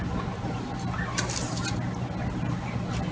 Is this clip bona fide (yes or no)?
yes